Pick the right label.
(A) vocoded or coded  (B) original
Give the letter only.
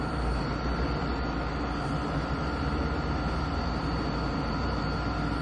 A